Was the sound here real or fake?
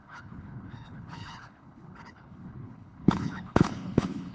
fake